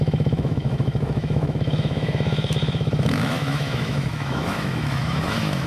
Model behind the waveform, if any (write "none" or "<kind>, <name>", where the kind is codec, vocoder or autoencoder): autoencoder, DAC-VAE